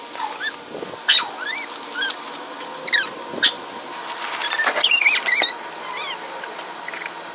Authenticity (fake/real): fake